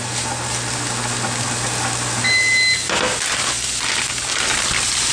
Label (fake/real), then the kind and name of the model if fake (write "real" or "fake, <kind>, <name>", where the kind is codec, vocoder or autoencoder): real